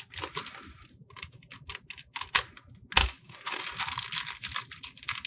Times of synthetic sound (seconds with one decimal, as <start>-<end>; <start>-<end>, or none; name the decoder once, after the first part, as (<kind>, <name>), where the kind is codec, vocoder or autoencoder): 3.0-3.6 (codec, DAC)